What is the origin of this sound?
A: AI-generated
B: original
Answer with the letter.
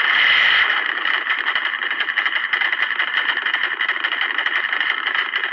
A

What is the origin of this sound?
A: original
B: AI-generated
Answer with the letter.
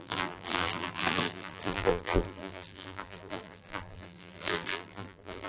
B